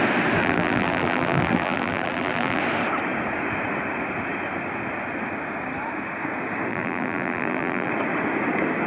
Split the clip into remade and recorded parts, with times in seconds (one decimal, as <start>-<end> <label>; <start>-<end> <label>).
0.0-0.4 recorded; 0.4-2.6 remade; 2.6-6.7 recorded; 6.7-7.9 remade; 7.9-8.9 recorded